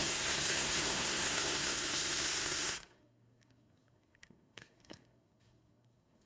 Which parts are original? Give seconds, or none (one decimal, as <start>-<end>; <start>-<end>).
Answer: none